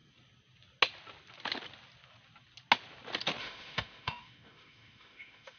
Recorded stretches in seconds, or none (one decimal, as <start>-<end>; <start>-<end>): 0.0-3.4